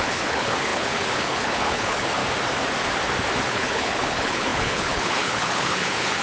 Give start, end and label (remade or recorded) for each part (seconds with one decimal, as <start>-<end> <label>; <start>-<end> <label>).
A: 0.0-2.2 remade; 2.2-3.5 recorded; 3.5-6.2 remade